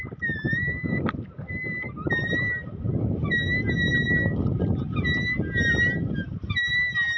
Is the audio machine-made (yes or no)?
no